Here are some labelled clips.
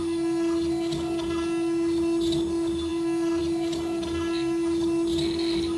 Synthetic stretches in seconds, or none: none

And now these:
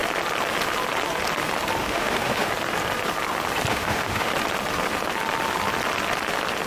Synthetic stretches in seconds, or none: 1.8-2.5 (autoencoder, DAC-VAE); 3.7-4.3

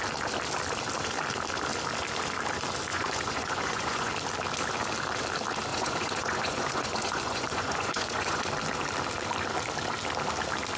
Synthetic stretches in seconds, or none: 2.9-4.1 (vocoder, Vocos); 5.7-8.4

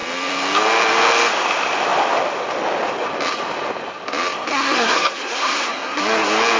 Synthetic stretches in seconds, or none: 4.5-6.0 (codec, SNAC)

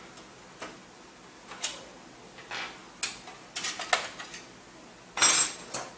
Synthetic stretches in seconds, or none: none